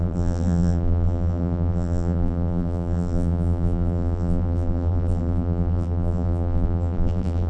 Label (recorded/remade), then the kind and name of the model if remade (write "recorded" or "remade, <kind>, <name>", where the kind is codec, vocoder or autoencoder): remade, vocoder, BigVGAN v2